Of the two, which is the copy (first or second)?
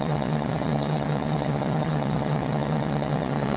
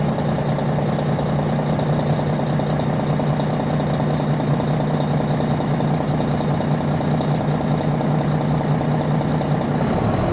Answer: first